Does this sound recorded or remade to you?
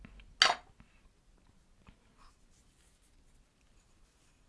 recorded